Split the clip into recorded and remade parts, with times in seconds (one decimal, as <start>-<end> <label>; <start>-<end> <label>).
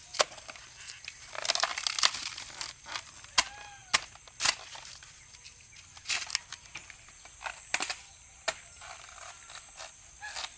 0.0-10.6 recorded